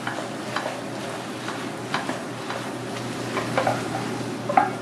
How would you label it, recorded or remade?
recorded